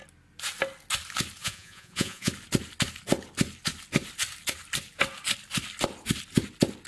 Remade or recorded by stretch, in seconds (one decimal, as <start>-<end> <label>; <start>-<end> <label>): 0.0-1.4 recorded; 1.4-2.3 remade; 2.3-6.9 recorded